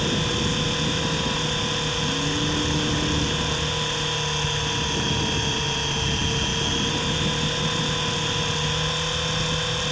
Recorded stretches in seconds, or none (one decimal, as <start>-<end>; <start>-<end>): 0.0-9.9